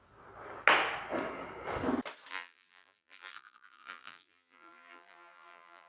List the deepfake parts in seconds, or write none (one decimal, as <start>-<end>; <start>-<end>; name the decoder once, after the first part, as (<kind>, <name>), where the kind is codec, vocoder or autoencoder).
2.3-5.9 (vocoder, BigVGAN v2)